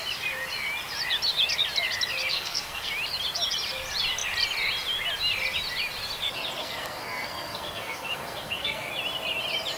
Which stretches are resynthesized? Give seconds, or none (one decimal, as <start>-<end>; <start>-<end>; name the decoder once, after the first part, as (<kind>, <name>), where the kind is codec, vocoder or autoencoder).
2.3-2.9 (codec, SNAC); 6.6-8.9